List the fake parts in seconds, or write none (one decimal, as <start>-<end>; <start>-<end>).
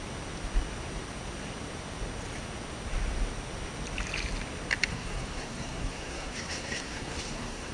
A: 4.9-7.7